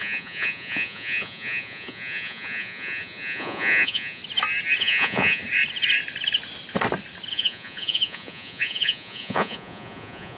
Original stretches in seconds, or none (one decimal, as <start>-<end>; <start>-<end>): 4.2-4.8; 5.4-7.3